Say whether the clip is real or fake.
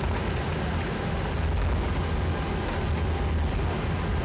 real